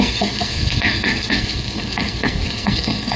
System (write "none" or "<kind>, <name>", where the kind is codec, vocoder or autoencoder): codec, SNAC